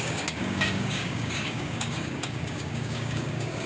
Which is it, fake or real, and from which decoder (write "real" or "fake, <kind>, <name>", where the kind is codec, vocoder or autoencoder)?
fake, codec, DAC